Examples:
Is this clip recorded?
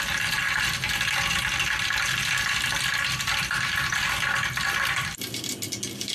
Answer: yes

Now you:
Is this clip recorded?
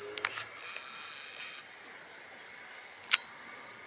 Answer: yes